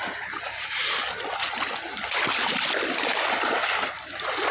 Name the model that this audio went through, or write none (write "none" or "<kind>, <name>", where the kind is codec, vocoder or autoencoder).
none